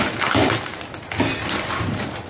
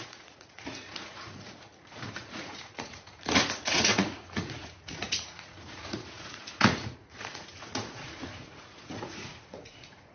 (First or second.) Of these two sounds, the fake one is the second